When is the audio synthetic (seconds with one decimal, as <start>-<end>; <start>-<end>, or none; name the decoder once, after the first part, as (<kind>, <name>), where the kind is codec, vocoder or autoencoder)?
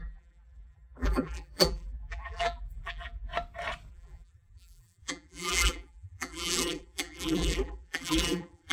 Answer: 0.0-3.3 (vocoder, BigVGAN v2); 3.9-8.7